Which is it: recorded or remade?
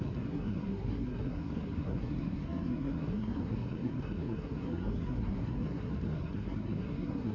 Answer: remade